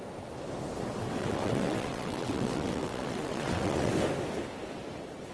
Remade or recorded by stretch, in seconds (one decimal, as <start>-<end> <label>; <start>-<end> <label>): 0.0-1.2 recorded; 1.2-3.9 remade; 3.9-5.3 recorded